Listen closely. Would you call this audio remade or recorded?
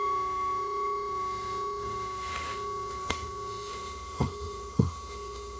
remade